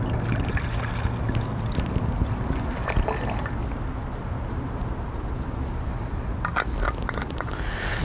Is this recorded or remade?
recorded